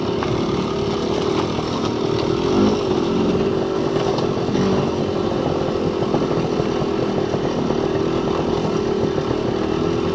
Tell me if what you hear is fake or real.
real